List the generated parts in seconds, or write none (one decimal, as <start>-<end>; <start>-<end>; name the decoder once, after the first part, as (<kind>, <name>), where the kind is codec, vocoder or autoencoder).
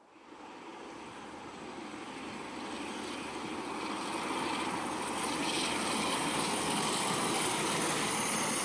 6.3-8.1 (codec, DAC)